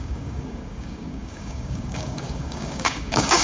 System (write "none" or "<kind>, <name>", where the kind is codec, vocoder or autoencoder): codec, DAC